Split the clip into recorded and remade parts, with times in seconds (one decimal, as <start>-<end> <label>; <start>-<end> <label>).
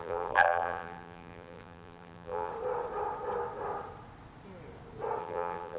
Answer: 0.0-2.5 remade; 2.5-5.2 recorded; 5.2-5.8 remade